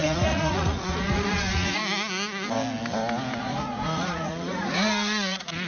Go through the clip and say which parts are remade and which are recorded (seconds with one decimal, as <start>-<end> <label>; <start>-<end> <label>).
0.0-1.8 remade; 1.8-3.4 recorded; 3.4-5.7 remade